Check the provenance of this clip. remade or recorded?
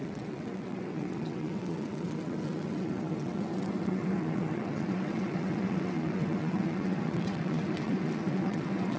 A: remade